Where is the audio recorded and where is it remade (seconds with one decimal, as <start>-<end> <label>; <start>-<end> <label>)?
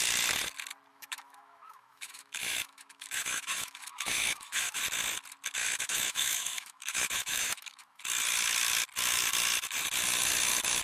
0.0-0.9 recorded; 0.9-4.8 remade; 4.8-5.6 recorded; 5.6-8.0 remade; 8.0-10.8 recorded